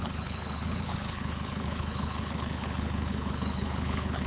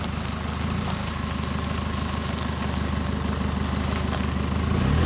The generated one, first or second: first